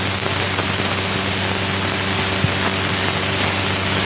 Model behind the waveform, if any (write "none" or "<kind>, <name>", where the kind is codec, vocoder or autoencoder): none